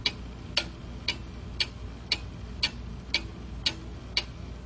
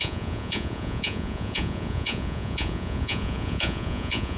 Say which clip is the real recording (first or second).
first